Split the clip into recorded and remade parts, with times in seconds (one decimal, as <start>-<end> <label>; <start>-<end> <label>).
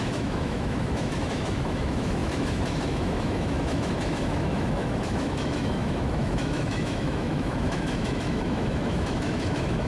0.0-9.9 remade